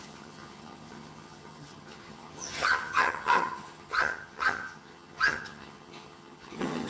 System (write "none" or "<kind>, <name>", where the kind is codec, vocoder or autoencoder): vocoder, HiFi-GAN